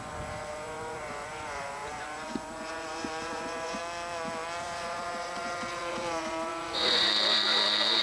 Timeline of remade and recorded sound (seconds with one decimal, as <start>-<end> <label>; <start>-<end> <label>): 0.0-3.8 remade; 3.8-4.6 recorded; 4.6-8.0 remade

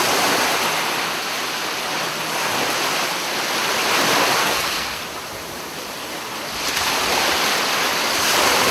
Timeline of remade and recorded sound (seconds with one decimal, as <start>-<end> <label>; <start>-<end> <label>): 0.0-4.4 recorded; 4.4-5.0 remade; 5.0-8.7 recorded

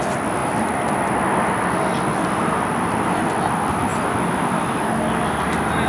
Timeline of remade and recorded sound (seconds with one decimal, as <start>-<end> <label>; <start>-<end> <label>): 0.0-0.4 recorded; 0.4-3.3 remade; 3.3-3.9 recorded; 3.9-4.8 remade; 4.8-5.9 recorded

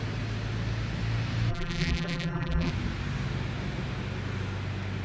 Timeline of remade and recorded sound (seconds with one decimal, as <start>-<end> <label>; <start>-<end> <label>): 0.0-1.5 recorded; 1.5-2.7 remade; 2.7-5.0 recorded